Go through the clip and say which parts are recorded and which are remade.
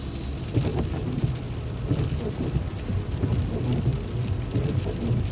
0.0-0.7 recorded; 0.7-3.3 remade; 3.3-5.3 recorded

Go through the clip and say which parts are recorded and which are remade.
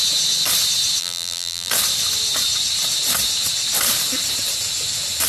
0.0-1.0 recorded; 1.0-1.7 remade; 1.7-5.3 recorded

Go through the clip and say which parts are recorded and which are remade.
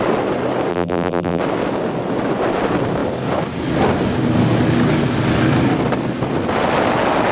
0.0-0.7 recorded; 0.7-1.4 remade; 1.4-7.3 recorded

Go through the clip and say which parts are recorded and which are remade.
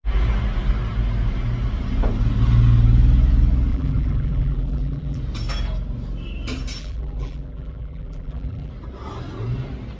0.0-3.7 recorded; 3.7-5.2 remade; 5.2-6.8 recorded; 6.8-8.7 remade; 8.7-10.0 recorded